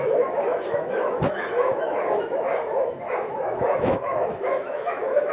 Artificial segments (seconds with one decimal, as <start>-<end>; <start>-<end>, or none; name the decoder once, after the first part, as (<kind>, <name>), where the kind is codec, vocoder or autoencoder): 0.0-5.3 (autoencoder, DAC-VAE)